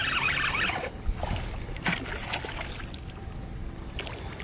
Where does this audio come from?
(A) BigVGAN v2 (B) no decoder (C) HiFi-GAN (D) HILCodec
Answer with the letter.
B